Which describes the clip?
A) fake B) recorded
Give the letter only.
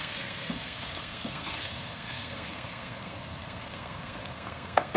A